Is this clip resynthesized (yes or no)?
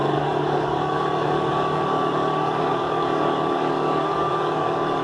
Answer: yes